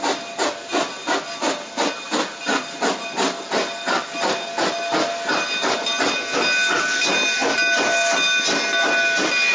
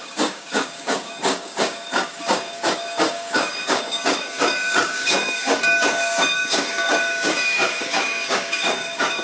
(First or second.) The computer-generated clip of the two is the second